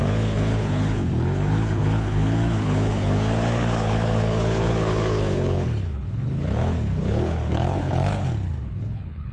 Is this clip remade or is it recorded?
remade